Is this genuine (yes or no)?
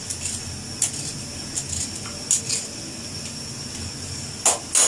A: yes